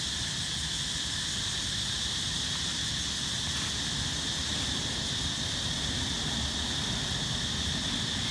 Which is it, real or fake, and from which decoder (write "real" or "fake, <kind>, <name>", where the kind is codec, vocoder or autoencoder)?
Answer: real